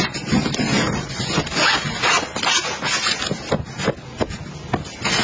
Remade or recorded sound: recorded